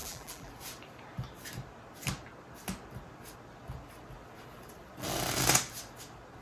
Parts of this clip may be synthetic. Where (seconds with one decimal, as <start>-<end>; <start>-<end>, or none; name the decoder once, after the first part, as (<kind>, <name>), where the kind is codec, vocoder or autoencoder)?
0.0-0.5 (vocoder, BigVGAN v2)